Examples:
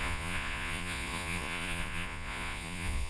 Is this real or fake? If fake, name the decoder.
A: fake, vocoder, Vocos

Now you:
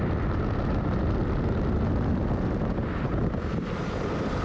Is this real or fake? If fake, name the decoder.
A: real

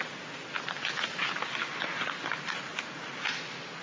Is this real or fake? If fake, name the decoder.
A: real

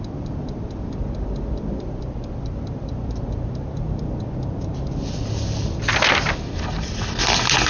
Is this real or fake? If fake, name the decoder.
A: fake, vocoder, BigVGAN v2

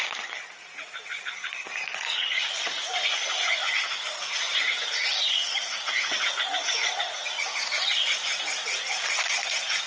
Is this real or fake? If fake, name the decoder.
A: fake, vocoder, Vocos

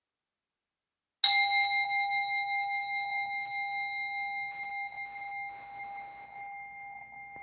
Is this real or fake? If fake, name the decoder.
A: real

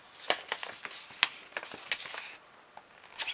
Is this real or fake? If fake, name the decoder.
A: real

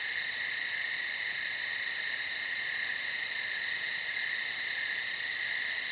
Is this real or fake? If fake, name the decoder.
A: real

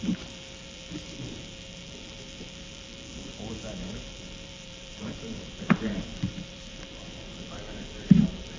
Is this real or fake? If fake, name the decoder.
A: fake, vocoder, BigVGAN v2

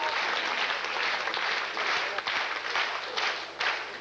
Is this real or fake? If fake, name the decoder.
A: real